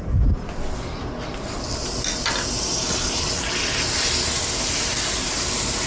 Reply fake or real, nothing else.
real